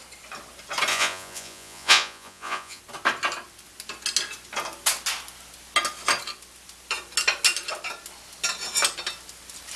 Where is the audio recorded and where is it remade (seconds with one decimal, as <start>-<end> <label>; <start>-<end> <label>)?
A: 0.0-0.9 recorded; 0.9-2.8 remade; 2.8-9.8 recorded